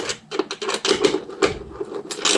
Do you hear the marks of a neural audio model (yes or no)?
no